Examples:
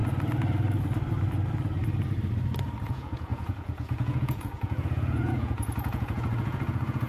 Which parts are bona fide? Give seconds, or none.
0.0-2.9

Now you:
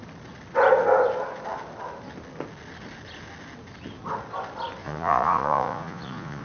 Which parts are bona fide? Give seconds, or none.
0.0-4.8

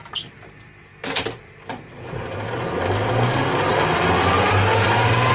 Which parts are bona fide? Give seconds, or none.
0.0-5.3

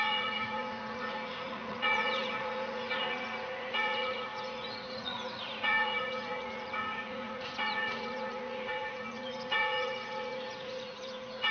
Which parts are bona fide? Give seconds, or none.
none

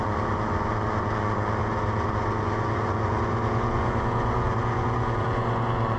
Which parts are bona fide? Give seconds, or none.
none

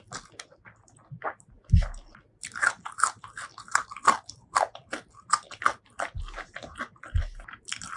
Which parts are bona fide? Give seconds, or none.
0.0-8.0

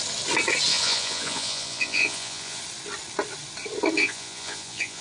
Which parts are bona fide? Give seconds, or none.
0.0-0.7; 2.6-4.0

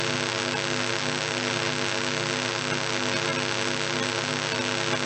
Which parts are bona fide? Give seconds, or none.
0.0-5.1